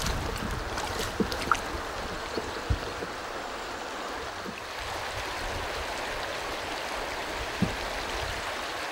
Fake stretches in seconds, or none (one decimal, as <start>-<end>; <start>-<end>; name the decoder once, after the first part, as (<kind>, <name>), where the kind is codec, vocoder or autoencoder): none